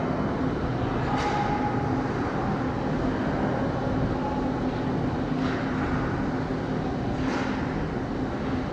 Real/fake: real